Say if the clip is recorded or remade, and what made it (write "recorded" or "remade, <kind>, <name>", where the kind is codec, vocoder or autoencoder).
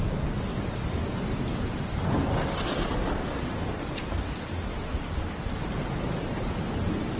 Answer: recorded